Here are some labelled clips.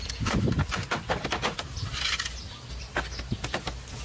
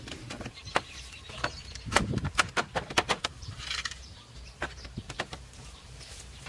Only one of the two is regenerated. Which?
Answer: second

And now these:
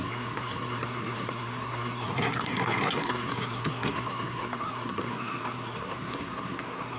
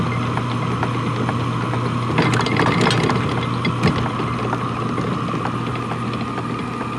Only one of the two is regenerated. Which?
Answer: first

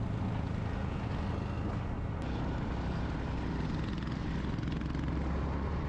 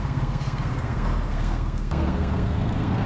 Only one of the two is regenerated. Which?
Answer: second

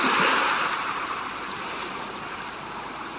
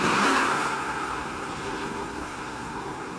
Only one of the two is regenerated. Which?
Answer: second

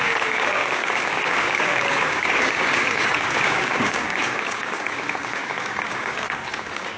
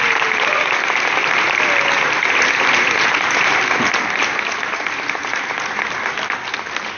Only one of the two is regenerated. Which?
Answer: first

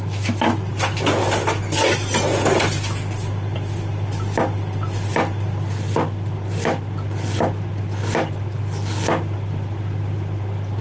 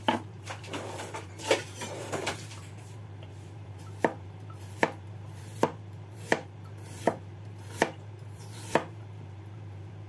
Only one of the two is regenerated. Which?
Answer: second